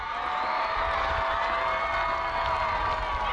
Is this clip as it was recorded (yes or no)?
yes